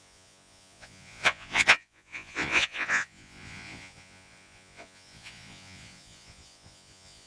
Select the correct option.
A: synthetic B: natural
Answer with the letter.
A